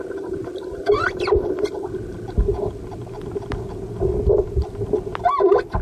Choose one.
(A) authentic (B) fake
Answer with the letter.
A